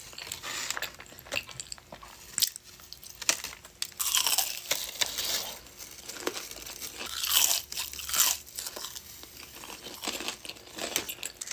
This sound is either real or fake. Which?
real